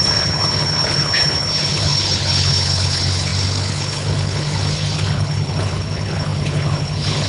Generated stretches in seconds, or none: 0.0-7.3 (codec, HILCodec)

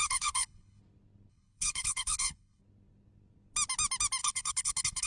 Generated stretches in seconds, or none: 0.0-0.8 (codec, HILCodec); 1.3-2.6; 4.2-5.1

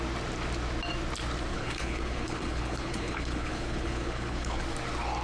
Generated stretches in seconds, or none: 1.5-4.6 (codec, HILCodec)

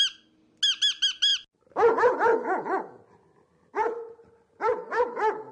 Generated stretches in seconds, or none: none

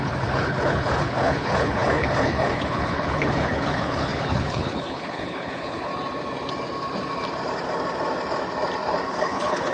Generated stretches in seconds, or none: 0.0-5.9 (codec, HILCodec); 9.2-9.7

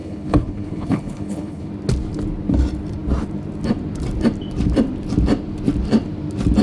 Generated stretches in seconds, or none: 0.0-1.7 (codec, HILCodec)